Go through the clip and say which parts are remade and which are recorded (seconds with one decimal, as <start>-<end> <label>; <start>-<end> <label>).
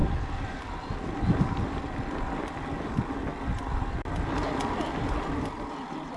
0.0-6.2 recorded